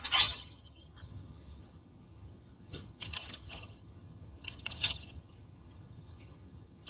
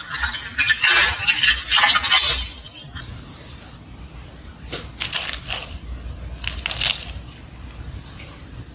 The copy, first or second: first